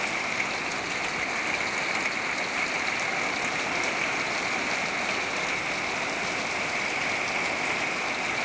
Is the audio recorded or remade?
recorded